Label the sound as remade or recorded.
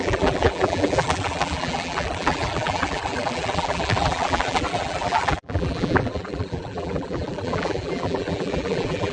remade